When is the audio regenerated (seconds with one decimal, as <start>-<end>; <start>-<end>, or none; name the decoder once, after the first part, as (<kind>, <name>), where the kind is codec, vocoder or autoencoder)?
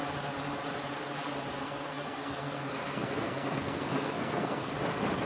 1.5-4.7 (codec, SNAC)